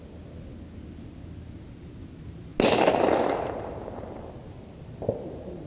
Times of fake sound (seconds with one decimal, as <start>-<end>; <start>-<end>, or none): none